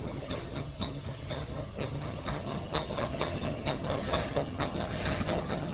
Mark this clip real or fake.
fake